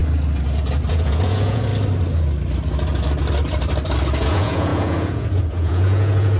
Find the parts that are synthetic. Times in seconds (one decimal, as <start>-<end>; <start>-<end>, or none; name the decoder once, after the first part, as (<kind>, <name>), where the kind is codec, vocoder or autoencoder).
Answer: 0.9-1.7 (vocoder, Vocos); 4.2-6.4